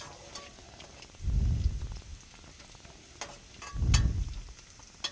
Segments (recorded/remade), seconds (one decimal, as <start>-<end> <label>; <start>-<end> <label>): 0.0-5.1 recorded